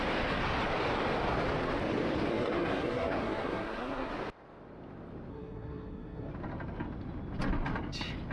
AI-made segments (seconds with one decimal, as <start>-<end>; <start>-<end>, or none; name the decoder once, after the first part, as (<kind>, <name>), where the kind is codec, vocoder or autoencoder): 2.3-4.1 (codec, SNAC); 5.3-6.3